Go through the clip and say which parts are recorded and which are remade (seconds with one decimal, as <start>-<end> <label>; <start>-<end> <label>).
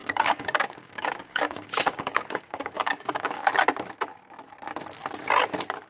0.0-3.5 remade; 3.5-5.9 recorded